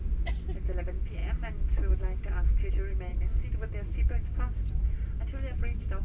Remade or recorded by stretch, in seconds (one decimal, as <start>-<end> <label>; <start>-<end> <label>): 0.0-6.0 recorded